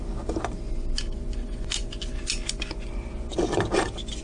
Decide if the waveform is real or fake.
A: real